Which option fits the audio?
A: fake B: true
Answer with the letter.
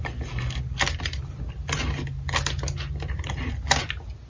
B